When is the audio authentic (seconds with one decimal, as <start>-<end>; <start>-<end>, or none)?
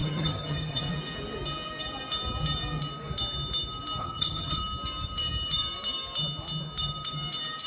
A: 0.9-4.0; 4.6-7.7